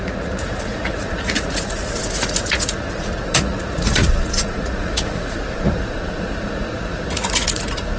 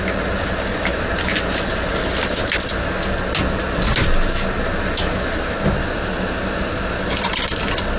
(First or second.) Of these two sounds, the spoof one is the first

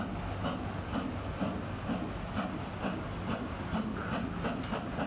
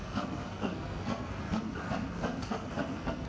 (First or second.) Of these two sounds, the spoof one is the second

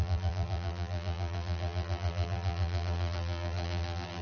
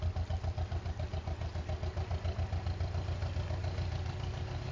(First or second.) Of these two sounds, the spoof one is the first